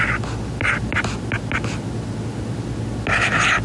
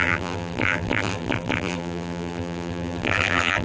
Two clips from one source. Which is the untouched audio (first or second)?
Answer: first